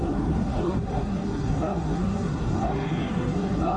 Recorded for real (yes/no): no